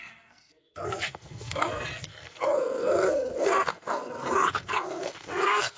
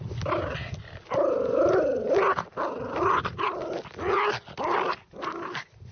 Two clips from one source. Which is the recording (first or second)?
second